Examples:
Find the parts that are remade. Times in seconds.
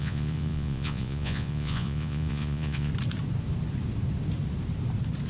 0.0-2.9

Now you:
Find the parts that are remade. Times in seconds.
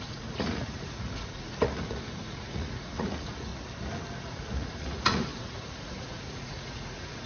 0.0-3.5; 4.2-7.3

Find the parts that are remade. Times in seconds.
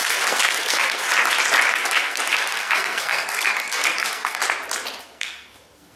0.0-1.1; 1.7-4.4; 5.0-6.0